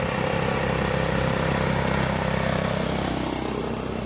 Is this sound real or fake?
real